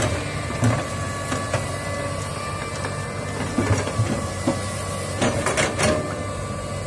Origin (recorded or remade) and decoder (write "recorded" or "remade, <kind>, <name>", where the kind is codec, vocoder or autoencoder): recorded